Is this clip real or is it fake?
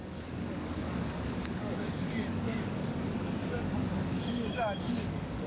fake